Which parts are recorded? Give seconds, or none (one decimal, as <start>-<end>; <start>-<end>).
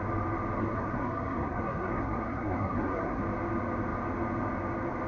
0.0-0.6; 3.2-5.1